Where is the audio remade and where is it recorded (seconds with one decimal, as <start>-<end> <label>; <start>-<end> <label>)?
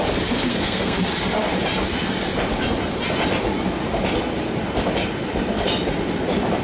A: 0.0-0.5 recorded; 0.5-1.0 remade; 1.0-6.6 recorded